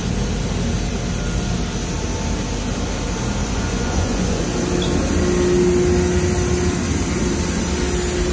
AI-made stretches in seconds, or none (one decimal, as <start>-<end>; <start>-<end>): 3.4-4.4